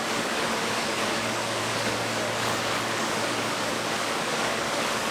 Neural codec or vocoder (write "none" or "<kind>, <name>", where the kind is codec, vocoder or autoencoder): codec, DAC